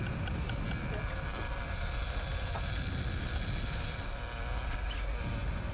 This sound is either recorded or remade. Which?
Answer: recorded